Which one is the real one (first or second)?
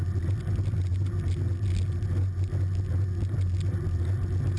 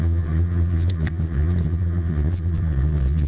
first